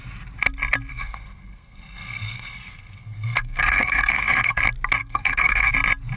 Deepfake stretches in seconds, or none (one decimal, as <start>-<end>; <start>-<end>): 0.9-4.6; 5.0-5.7